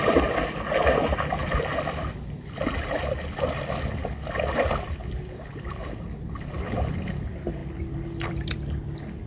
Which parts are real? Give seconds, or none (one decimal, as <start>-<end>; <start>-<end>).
0.0-9.3